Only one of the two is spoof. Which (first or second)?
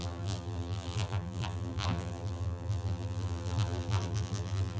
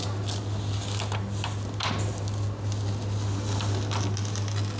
first